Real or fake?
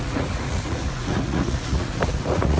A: fake